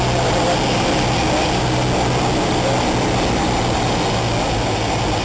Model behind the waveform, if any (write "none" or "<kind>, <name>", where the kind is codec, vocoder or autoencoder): none